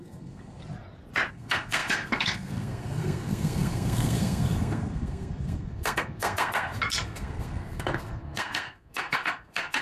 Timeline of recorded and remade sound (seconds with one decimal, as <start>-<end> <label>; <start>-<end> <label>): 0.0-0.6 remade; 0.6-1.3 recorded; 1.3-9.8 remade